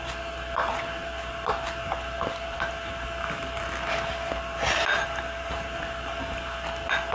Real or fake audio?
real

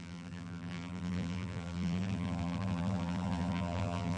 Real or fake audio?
fake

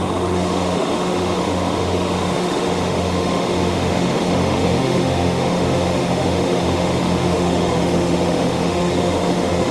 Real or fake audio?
fake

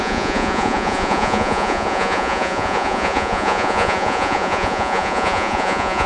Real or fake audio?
fake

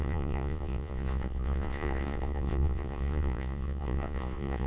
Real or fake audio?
fake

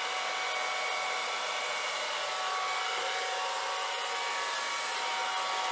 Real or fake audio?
real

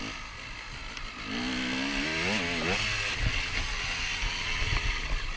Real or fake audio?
real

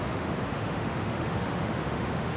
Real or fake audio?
fake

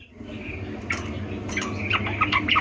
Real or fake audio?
real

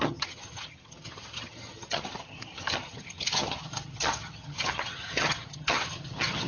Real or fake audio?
fake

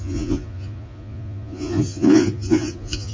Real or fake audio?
fake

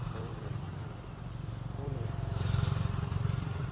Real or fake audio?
fake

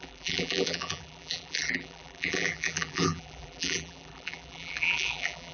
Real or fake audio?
fake